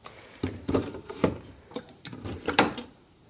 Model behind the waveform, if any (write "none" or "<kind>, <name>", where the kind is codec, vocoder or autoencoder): vocoder, BigVGAN v2